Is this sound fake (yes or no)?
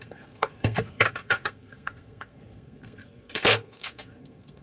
yes